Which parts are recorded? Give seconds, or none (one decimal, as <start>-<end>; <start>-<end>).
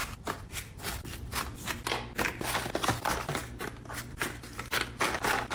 0.0-5.5